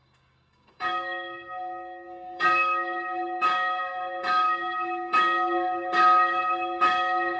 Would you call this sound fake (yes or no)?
yes